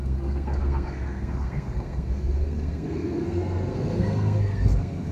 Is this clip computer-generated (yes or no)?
yes